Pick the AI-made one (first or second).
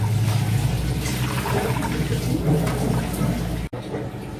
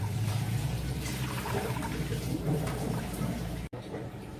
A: second